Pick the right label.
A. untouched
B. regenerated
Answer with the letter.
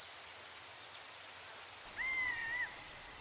B